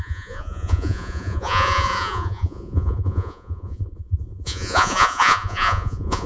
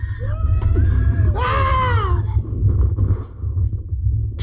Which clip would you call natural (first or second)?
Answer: second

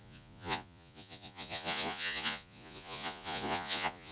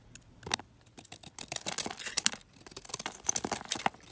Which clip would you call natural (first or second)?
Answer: second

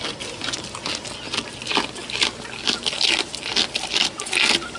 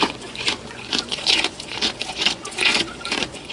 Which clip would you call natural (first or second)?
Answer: first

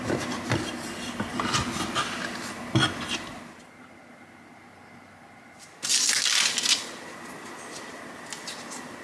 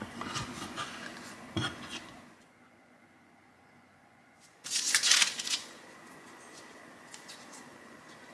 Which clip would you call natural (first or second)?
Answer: first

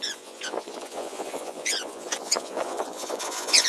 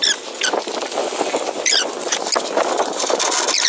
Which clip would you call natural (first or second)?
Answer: second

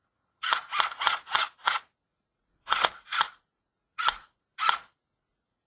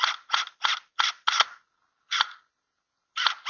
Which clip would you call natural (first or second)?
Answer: second